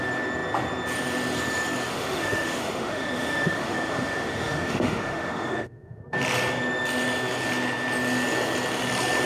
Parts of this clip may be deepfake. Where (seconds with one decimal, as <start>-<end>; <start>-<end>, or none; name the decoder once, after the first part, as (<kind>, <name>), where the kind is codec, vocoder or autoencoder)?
1.9-6.0 (autoencoder, DAC-VAE)